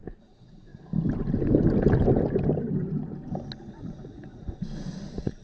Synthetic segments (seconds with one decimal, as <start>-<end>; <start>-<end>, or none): 0.0-0.7; 3.7-5.4

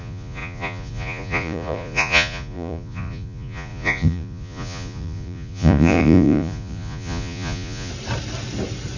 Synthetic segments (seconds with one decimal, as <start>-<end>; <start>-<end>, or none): 0.0-7.9

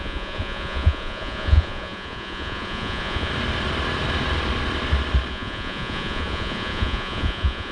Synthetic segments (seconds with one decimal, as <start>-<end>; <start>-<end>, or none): 0.0-3.3; 5.3-7.7

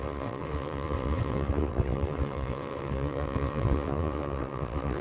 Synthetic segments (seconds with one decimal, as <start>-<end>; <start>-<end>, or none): 0.0-5.0

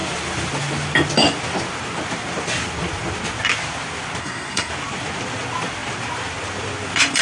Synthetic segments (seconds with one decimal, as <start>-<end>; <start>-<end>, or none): 4.2-4.7

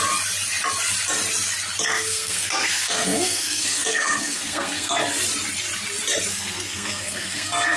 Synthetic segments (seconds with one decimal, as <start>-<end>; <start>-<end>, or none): 1.9-5.0; 6.3-7.8

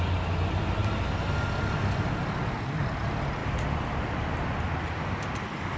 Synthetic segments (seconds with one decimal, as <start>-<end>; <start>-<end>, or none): none

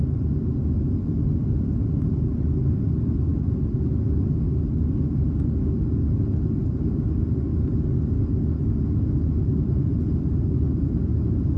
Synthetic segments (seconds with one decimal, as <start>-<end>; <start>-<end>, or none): none